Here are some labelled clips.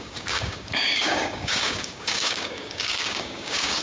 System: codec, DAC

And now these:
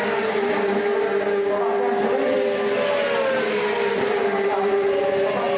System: none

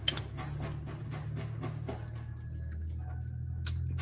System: none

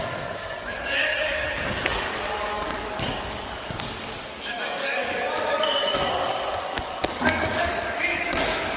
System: codec, DAC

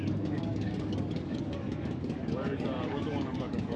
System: codec, DAC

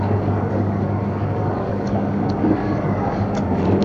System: codec, DAC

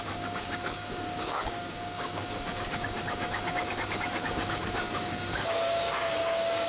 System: codec, DAC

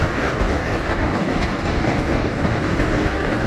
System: codec, DAC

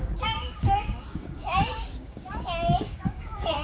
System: codec, DAC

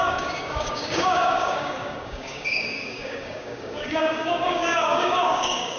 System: codec, DAC